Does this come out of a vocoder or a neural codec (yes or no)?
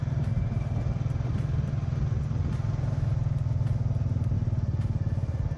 no